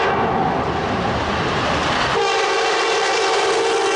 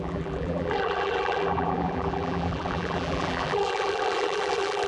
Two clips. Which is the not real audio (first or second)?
second